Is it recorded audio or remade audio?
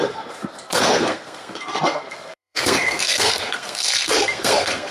remade